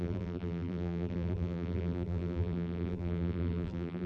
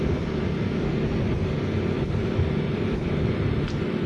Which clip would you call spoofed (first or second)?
first